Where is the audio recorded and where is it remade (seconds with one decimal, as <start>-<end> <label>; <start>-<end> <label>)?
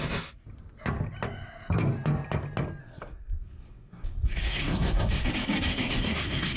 0.0-2.8 recorded; 2.8-5.3 remade; 5.3-5.7 recorded; 5.7-6.6 remade